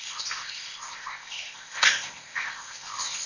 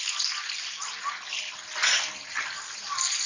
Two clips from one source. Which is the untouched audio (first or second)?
second